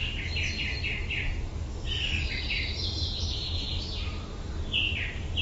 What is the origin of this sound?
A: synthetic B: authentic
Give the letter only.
B